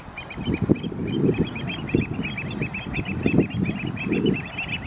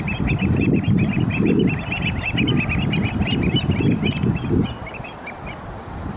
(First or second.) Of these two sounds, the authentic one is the first